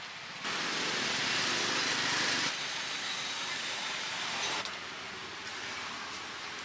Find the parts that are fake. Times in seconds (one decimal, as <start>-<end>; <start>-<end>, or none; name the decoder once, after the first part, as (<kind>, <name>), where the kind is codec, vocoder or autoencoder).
1.9-5.9 (vocoder, BigVGAN v2)

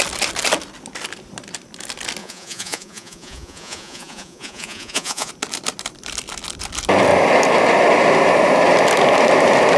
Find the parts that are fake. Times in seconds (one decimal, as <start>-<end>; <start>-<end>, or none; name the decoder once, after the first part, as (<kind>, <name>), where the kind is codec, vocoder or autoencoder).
2.2-5.3 (vocoder, Vocos)

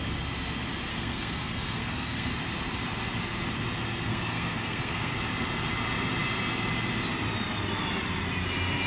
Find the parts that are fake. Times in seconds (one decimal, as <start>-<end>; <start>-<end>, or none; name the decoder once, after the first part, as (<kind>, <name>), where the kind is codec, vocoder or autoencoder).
0.9-2.3 (codec, SNAC); 4.1-5.1

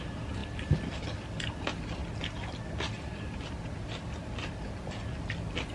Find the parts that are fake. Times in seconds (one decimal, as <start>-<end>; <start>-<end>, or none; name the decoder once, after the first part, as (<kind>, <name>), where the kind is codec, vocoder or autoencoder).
none